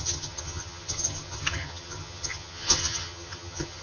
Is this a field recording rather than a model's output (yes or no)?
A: no